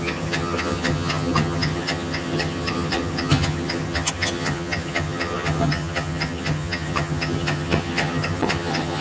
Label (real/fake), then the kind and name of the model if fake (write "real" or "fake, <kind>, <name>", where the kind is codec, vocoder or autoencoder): fake, vocoder, HiFi-GAN